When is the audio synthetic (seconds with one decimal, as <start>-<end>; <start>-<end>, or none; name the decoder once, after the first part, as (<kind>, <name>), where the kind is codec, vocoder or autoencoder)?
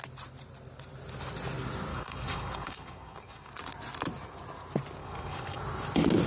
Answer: 1.9-3.5 (codec, DAC); 5.0-5.6